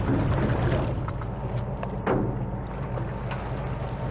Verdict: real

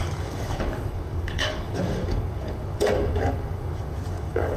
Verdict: fake